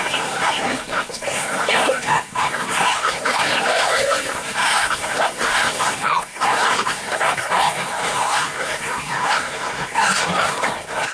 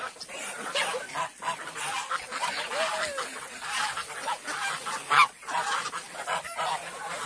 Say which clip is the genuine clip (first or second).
second